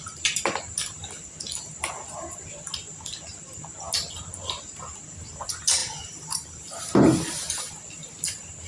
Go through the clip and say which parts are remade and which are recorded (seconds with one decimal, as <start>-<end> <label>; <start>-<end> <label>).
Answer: 0.0-5.8 recorded; 5.8-6.8 remade; 6.8-8.7 recorded